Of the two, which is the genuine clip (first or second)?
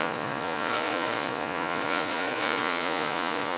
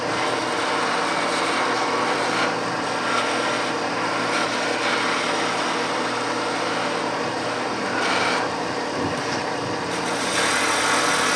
second